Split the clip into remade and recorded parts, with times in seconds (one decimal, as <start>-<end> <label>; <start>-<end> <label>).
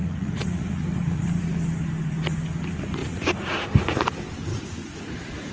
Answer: 0.0-1.4 remade; 1.4-3.0 recorded; 3.0-3.6 remade; 3.6-4.5 recorded; 4.5-5.5 remade